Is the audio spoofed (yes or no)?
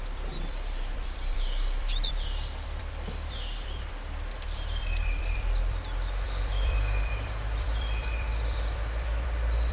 yes